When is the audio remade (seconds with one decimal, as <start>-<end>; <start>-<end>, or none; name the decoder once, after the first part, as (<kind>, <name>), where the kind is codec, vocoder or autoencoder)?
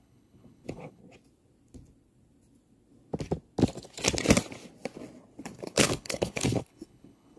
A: 0.0-1.0 (codec, HILCodec); 5.4-7.4